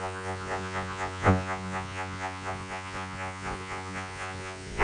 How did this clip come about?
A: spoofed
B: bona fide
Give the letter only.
A